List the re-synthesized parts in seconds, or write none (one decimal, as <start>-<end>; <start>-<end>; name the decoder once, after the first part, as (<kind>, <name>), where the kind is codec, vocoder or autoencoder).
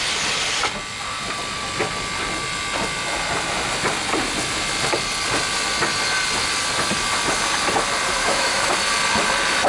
8.2-8.7 (autoencoder, DAC-VAE)